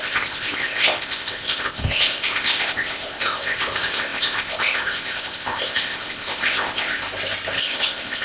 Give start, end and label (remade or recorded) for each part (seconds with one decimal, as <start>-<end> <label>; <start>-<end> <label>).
0.0-7.0 remade; 7.0-7.6 recorded; 7.6-8.2 remade